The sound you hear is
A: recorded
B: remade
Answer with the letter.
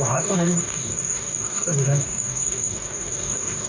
B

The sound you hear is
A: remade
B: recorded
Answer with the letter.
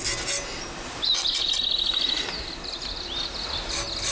B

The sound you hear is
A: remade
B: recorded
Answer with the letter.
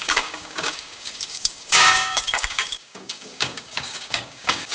A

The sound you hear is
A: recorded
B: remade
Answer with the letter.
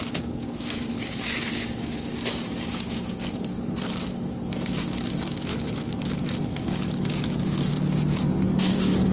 B